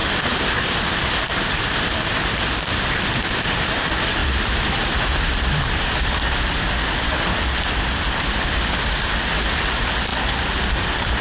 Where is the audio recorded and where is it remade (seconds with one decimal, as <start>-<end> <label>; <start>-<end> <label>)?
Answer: 0.0-0.9 recorded; 0.9-10.1 remade; 10.1-10.7 recorded; 10.7-11.2 remade